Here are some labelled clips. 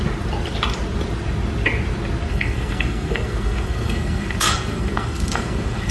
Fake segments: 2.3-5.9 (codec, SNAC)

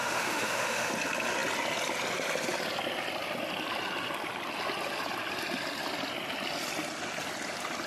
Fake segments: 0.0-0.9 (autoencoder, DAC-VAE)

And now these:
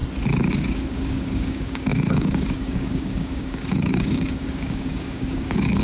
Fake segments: 0.6-5.8 (codec, DAC)

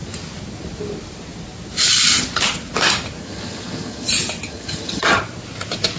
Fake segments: 3.2-4.1 (vocoder, HiFi-GAN); 4.5-5.2

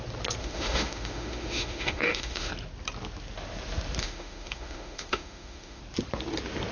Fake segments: 0.4-2.5 (autoencoder, DAC-VAE); 4.0-5.8